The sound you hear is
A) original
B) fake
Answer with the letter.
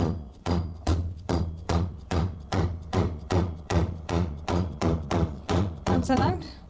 B